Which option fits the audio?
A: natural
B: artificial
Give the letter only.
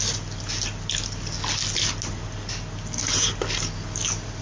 A